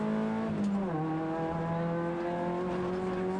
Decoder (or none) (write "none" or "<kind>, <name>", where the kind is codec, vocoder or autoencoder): none